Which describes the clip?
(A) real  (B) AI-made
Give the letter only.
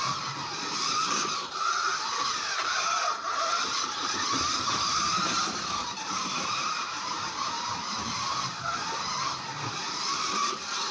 B